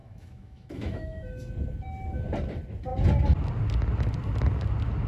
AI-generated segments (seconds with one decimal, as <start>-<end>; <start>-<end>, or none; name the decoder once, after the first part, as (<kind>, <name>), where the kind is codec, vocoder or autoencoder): 0.0-1.5 (autoencoder, DAC-VAE)